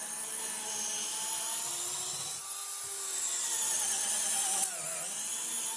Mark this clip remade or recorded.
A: recorded